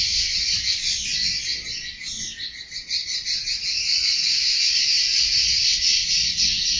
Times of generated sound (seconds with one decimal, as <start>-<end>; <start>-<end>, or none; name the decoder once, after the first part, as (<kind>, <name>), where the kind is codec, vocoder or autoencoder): 4.3-5.0 (codec, DAC)